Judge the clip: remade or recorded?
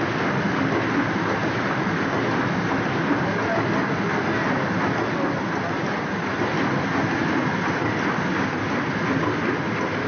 recorded